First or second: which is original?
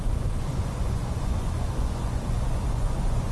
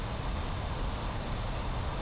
second